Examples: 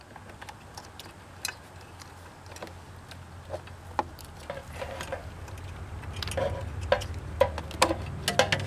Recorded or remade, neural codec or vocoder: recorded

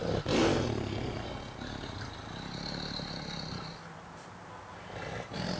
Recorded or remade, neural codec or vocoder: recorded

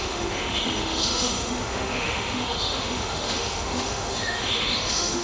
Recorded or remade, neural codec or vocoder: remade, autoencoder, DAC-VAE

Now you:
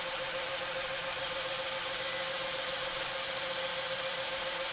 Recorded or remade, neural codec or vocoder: recorded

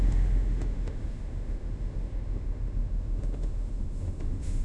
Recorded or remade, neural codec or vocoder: remade, autoencoder, DAC-VAE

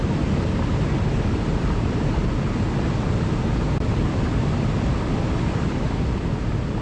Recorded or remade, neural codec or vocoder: recorded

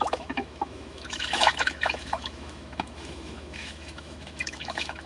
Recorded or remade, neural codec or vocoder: remade, autoencoder, DAC-VAE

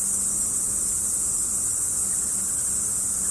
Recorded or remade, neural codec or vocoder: recorded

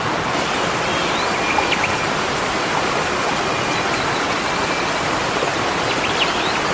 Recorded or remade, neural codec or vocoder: recorded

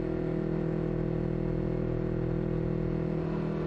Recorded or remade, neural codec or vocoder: recorded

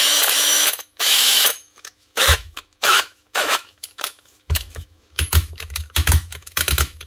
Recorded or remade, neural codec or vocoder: remade, autoencoder, DAC-VAE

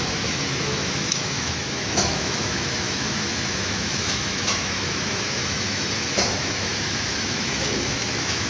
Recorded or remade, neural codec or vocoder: remade, autoencoder, DAC-VAE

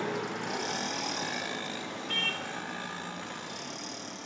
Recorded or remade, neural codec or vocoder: recorded